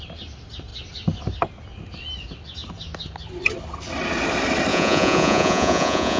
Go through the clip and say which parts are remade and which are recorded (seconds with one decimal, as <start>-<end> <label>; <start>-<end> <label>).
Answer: 0.0-4.7 recorded; 4.7-6.2 remade